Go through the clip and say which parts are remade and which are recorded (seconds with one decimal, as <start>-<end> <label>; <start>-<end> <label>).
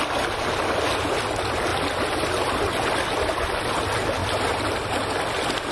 0.0-5.7 recorded